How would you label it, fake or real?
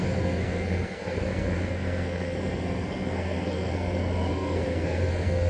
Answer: fake